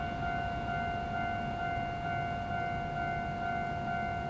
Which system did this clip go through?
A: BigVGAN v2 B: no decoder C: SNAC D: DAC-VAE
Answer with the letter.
B